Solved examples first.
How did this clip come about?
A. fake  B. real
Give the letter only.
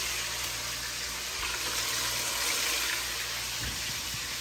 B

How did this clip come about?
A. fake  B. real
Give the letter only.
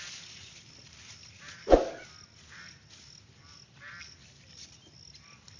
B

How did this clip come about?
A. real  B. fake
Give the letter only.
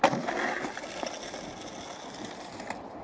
A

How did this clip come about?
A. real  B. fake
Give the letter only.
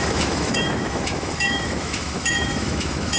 B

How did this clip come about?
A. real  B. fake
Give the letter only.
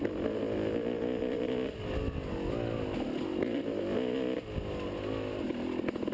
A